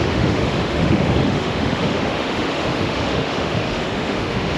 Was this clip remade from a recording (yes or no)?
yes